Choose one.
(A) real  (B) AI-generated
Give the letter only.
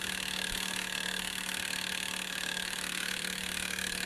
B